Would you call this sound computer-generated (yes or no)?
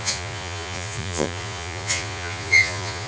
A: yes